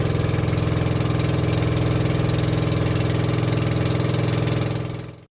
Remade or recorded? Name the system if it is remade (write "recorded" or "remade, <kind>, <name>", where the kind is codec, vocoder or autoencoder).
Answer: recorded